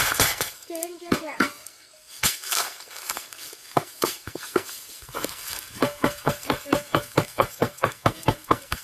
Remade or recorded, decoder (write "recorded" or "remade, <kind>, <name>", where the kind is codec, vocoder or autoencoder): remade, codec, SNAC